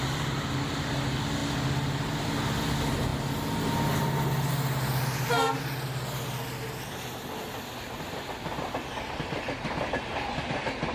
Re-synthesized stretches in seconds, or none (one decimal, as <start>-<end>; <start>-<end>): none